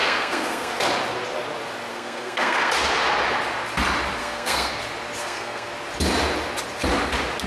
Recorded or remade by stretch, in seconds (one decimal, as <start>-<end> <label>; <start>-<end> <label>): 0.0-0.8 remade; 0.8-1.9 recorded; 1.9-2.7 remade; 2.7-4.2 recorded; 4.2-4.7 remade; 4.7-5.2 recorded; 5.2-5.7 remade; 5.7-7.5 recorded